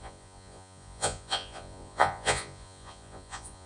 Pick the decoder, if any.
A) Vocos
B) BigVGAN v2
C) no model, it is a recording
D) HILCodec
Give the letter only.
A